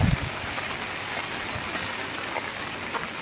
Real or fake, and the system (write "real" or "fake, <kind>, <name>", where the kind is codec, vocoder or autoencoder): real